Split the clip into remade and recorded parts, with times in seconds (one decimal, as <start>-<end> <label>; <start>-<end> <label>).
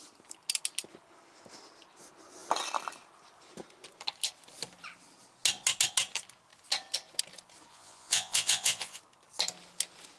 0.0-7.7 recorded; 7.7-9.0 remade; 9.0-10.2 recorded